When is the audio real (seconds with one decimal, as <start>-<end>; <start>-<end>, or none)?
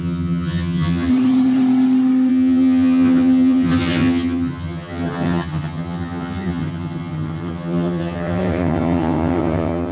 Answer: 1.1-2.3